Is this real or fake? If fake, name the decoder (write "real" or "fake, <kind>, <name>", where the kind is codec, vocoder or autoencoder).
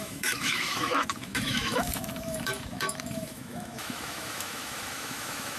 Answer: fake, autoencoder, DAC-VAE